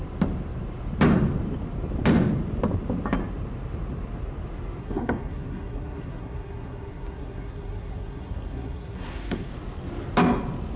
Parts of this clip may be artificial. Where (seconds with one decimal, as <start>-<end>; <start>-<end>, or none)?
4.8-9.5